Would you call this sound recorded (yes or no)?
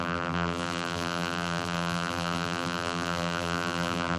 no